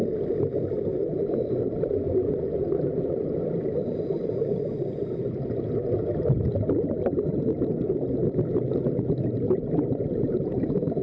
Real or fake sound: real